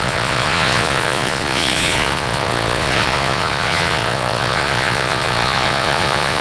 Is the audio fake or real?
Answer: fake